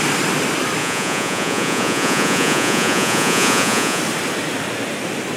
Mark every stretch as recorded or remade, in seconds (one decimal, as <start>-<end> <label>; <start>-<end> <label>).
0.0-0.8 recorded; 0.8-4.0 remade; 4.0-5.4 recorded